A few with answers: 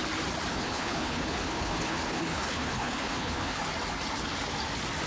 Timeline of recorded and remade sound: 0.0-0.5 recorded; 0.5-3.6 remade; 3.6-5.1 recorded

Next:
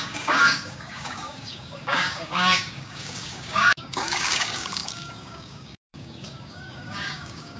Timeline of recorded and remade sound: 0.0-7.6 remade

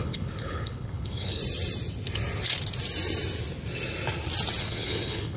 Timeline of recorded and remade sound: 0.0-1.4 remade; 1.4-4.6 recorded; 4.6-5.4 remade

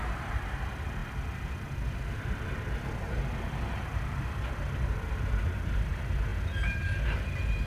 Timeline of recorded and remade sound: 0.0-7.7 recorded

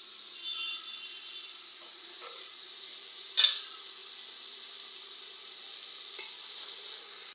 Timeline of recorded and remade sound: 0.0-7.3 recorded

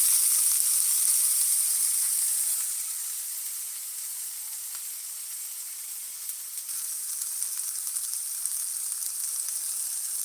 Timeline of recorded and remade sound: 0.0-1.2 recorded; 1.2-4.3 remade; 4.3-10.2 recorded

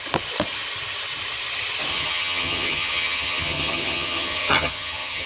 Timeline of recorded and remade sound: 0.0-1.9 recorded; 1.9-5.3 remade